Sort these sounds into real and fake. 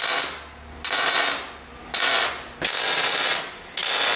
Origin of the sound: real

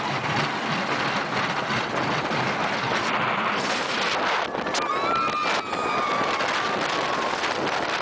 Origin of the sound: real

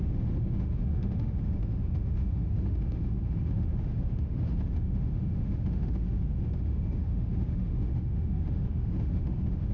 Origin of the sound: fake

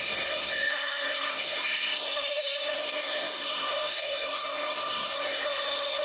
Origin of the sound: fake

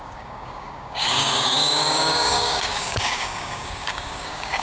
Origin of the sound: fake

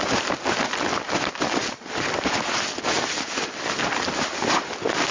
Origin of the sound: real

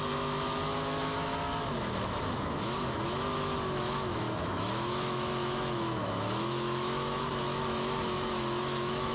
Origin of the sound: fake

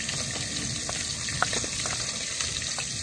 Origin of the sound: real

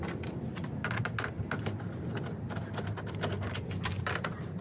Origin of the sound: real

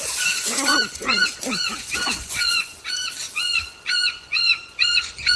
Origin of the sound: fake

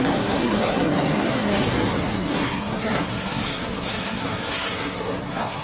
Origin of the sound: fake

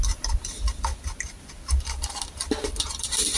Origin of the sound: real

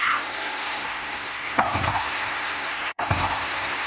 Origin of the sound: fake